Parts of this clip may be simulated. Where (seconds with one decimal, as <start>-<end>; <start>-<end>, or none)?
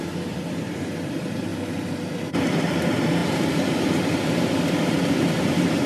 0.0-1.5; 2.1-5.9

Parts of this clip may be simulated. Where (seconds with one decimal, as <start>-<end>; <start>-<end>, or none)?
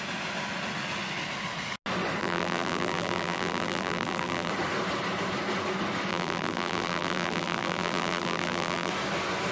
2.2-4.5; 6.1-8.9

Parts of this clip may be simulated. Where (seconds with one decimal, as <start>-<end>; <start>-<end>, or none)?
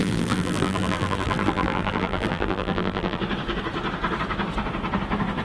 0.0-3.2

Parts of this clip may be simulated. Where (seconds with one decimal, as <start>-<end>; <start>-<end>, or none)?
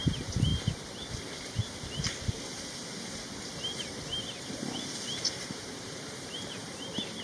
0.0-0.5; 3.4-5.7; 6.2-7.2